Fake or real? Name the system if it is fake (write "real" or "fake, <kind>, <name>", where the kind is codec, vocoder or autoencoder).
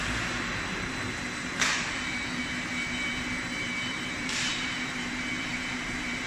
fake, vocoder, BigVGAN v2